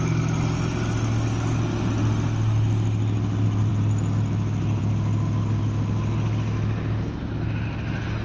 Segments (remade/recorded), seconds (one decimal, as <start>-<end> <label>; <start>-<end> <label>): 0.0-8.2 recorded